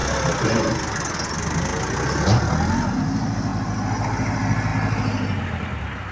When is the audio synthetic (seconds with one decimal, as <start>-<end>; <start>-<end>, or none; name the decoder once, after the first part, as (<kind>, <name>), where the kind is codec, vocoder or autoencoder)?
0.6-1.7 (vocoder, BigVGAN v2); 2.9-3.5; 4.1-4.7; 5.4-6.1